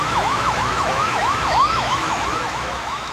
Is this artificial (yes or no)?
yes